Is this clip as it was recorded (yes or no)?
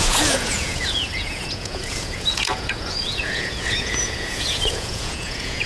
no